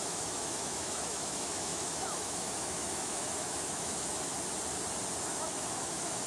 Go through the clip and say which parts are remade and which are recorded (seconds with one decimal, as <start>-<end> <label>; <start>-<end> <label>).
0.0-4.3 remade; 4.3-5.2 recorded; 5.2-6.3 remade